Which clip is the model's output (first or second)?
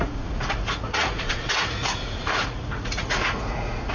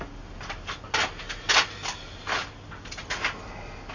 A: first